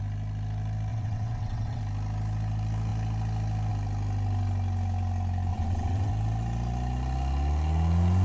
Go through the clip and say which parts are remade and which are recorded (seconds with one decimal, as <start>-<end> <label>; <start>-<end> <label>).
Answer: 0.0-0.9 recorded; 0.9-1.8 remade; 1.8-5.5 recorded; 5.5-6.1 remade; 6.1-8.2 recorded